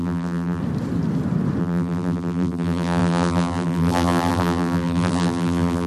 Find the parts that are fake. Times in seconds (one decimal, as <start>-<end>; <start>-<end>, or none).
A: 0.0-0.6; 1.6-5.9